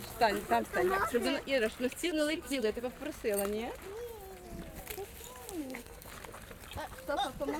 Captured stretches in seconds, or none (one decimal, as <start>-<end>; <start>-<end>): 0.0-2.0; 2.8-5.6; 6.1-7.6